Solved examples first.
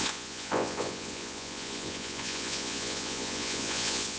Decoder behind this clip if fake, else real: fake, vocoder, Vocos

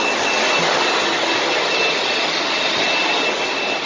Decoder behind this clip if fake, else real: real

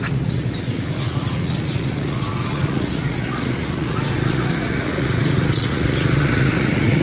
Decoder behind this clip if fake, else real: fake, vocoder, Vocos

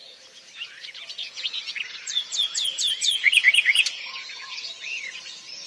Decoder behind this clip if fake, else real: fake, vocoder, Vocos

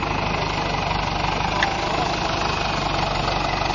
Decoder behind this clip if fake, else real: real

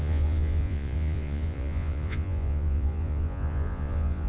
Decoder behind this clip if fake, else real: fake, vocoder, Vocos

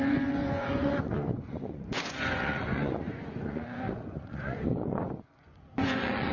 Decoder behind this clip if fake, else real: fake, vocoder, Vocos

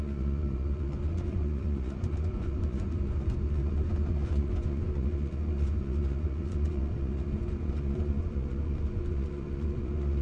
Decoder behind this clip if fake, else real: fake, vocoder, Vocos